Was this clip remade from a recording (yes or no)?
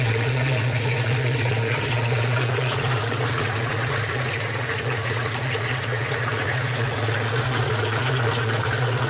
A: yes